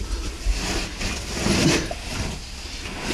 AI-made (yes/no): no